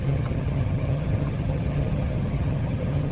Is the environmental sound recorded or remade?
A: remade